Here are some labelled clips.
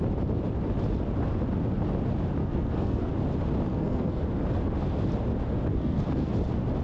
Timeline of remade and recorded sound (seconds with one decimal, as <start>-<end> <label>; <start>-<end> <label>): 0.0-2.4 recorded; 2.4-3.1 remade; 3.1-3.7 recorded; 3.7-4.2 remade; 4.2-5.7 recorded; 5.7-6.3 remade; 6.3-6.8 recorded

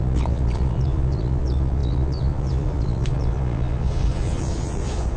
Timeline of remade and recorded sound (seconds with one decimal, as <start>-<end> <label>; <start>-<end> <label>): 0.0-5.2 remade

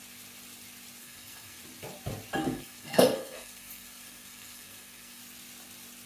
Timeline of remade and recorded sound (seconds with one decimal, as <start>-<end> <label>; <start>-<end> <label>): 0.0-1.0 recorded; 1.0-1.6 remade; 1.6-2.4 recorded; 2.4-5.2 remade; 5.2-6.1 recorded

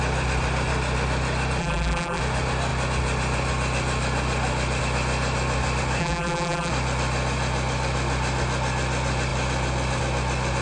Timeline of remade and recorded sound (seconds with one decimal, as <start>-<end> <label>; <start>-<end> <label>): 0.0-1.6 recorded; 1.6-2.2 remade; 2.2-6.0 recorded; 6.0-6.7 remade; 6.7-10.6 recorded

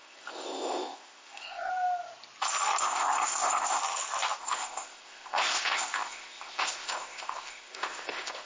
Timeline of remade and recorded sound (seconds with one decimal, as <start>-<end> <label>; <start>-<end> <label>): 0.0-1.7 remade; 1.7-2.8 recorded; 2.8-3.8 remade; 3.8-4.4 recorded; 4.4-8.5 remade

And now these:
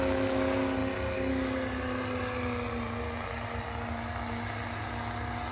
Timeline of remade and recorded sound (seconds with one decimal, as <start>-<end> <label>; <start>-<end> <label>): 0.0-5.5 recorded

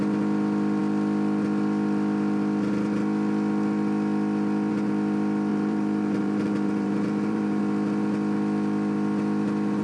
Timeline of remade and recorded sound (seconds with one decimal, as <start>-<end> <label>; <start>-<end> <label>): 0.0-5.5 recorded; 5.5-7.6 remade; 7.6-9.8 recorded